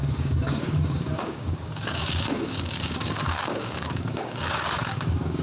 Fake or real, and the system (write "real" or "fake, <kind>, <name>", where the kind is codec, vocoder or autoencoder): fake, codec, DAC